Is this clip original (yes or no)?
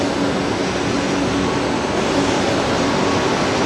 yes